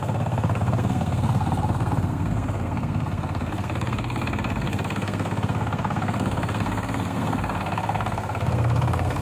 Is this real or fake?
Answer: fake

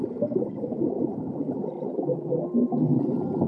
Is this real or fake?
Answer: fake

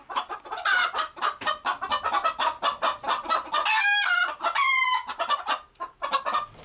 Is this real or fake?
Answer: real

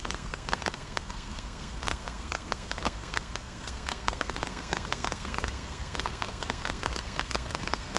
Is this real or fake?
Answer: fake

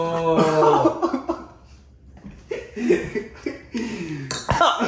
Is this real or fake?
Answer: real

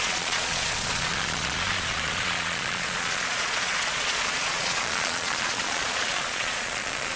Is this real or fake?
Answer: fake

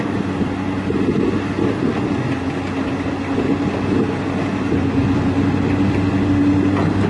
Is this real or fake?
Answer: real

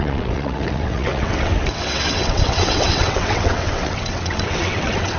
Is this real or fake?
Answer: fake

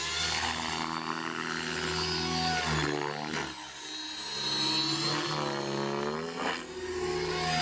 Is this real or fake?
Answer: real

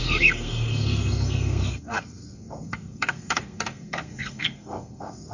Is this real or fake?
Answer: fake